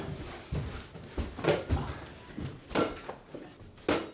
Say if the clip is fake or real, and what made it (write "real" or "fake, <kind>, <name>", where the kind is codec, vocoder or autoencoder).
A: real